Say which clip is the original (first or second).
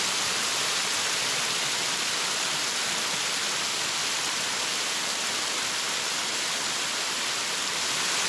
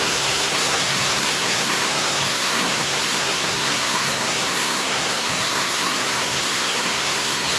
first